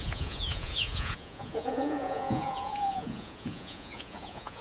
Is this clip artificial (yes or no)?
yes